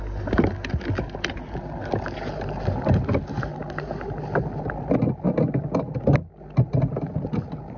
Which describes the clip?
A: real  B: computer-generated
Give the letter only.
A